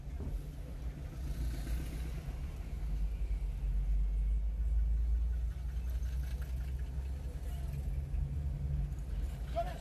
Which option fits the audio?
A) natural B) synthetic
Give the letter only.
A